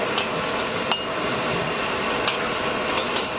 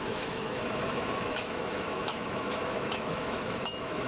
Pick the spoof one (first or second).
second